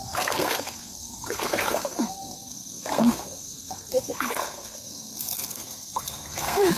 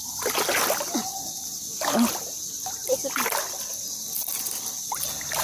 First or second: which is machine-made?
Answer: first